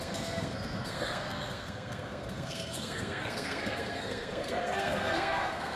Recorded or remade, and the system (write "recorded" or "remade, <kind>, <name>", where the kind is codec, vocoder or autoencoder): remade, codec, SNAC